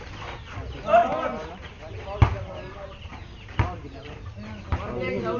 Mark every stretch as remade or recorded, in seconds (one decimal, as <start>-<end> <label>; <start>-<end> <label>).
0.0-1.0 recorded; 1.0-1.8 remade; 1.8-3.1 recorded; 3.1-4.3 remade; 4.3-5.4 recorded